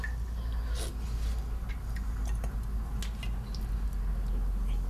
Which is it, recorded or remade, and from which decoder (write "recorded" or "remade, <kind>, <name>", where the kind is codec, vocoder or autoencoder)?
recorded